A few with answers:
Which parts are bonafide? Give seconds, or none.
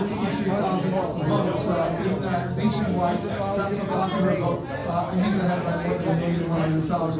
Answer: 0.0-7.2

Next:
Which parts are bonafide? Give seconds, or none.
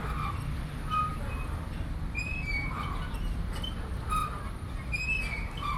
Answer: 1.1-1.7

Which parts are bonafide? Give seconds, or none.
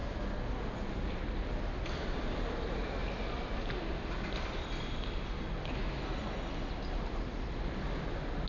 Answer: 0.0-8.5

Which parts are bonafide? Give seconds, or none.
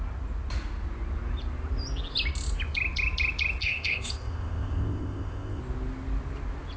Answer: 0.0-3.6; 5.6-6.8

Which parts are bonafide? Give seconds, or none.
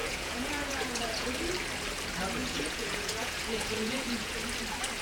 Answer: 1.3-2.4; 4.4-5.0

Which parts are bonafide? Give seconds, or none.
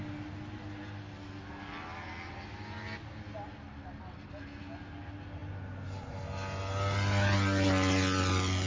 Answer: 0.0-8.7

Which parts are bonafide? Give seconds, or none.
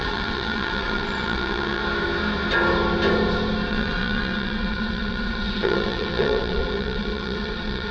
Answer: 1.8-3.7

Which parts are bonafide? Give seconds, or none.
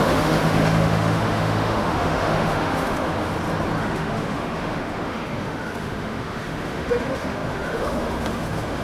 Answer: 3.3-3.8